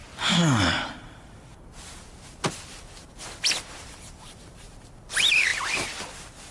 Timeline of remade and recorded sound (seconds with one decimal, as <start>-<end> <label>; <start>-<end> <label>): 0.0-0.9 recorded; 0.9-1.5 remade; 1.5-2.7 recorded; 2.7-5.5 remade; 5.5-6.5 recorded